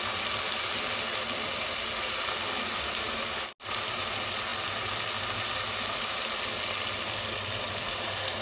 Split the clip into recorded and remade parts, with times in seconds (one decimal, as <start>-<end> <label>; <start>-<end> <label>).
0.0-8.4 recorded